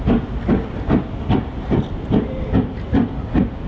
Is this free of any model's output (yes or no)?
yes